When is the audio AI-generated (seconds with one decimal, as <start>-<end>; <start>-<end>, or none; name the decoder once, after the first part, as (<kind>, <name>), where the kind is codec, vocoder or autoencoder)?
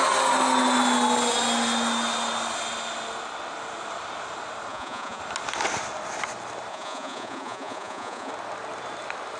4.7-5.2 (vocoder, Vocos); 6.7-8.3